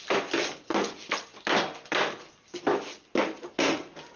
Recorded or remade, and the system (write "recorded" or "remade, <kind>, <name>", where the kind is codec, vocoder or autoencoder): recorded